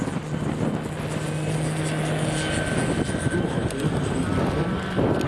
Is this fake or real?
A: real